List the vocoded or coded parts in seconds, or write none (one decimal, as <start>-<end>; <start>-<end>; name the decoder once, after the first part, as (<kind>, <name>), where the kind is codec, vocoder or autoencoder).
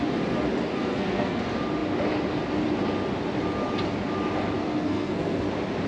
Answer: 0.7-1.4 (codec, SNAC); 4.6-5.4